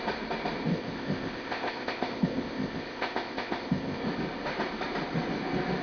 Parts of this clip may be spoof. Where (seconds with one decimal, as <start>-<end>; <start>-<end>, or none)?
0.7-4.0